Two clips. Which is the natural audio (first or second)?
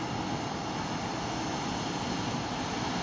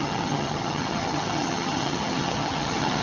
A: first